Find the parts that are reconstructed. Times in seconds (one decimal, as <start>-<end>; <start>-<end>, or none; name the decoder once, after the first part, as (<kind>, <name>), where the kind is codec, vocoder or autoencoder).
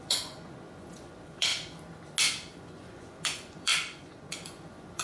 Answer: 0.0-1.5 (vocoder, Vocos); 2.6-5.0